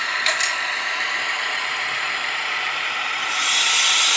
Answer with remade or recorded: remade